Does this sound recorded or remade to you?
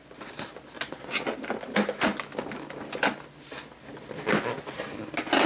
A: recorded